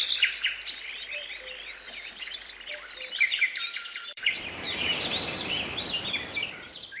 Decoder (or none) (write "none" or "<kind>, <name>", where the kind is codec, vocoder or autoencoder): vocoder, BigVGAN v2